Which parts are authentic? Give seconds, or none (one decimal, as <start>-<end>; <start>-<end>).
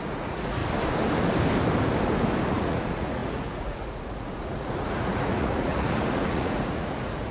0.6-2.5